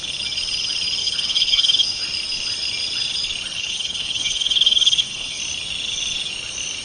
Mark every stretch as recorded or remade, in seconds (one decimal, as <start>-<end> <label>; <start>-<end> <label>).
0.0-1.0 recorded; 1.0-2.0 remade; 2.0-3.6 recorded; 3.6-5.4 remade; 5.4-6.8 recorded